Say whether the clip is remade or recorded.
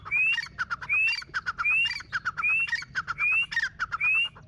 recorded